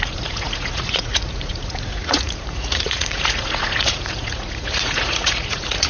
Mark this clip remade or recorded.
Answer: remade